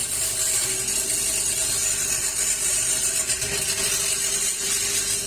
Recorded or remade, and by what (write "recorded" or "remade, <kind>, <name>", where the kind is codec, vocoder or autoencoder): remade, vocoder, BigVGAN v2